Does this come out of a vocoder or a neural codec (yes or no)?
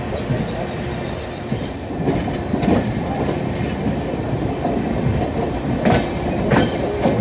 no